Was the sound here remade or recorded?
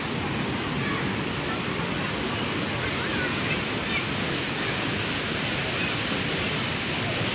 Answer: recorded